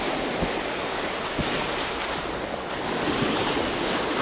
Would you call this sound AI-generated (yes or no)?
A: no